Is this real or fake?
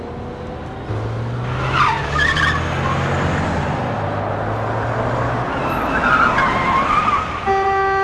real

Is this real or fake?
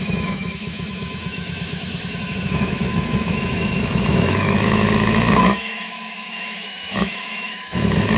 fake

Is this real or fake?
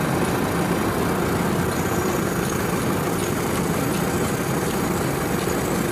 real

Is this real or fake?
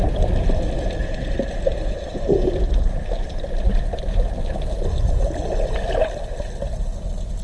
real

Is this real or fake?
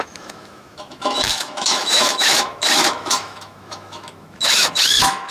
fake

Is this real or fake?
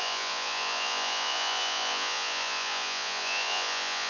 fake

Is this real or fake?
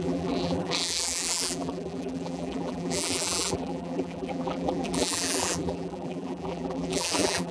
fake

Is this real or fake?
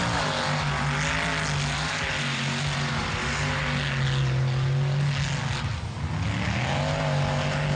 real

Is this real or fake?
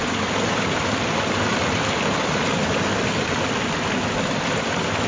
real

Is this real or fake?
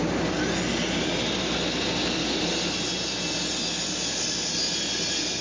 real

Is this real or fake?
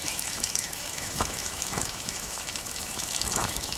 fake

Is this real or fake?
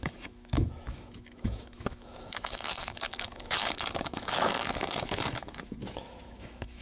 fake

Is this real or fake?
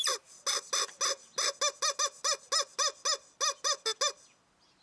real